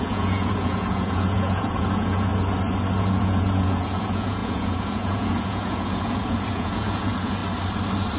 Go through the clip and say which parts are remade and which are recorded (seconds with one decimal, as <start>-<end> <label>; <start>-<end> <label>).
0.0-2.3 remade; 2.3-2.9 recorded; 2.9-7.4 remade; 7.4-8.2 recorded